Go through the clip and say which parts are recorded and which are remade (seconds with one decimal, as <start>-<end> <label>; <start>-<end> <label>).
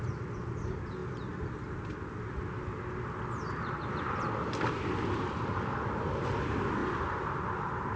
0.0-8.0 recorded